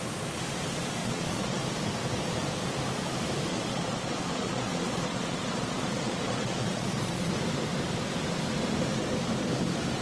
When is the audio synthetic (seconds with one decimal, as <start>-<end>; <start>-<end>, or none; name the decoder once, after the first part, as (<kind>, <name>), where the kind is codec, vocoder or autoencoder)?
1.0-1.6 (vocoder, Vocos); 3.5-7.3